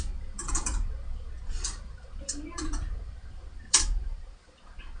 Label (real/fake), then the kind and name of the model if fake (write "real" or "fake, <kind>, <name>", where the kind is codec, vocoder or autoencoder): fake, vocoder, BigVGAN v2